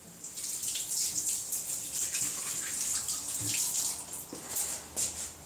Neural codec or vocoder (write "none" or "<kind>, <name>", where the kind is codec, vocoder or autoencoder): none